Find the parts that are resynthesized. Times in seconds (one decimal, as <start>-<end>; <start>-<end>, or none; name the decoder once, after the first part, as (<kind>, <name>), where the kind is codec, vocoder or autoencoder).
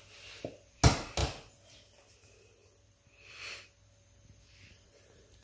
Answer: none